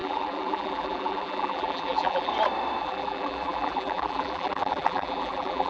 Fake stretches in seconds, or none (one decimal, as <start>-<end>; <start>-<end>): 0.0-2.3; 2.8-5.7

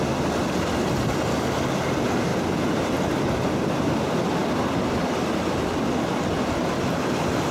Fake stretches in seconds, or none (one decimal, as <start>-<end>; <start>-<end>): none

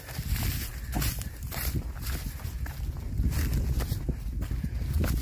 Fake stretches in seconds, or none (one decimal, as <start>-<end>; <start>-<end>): none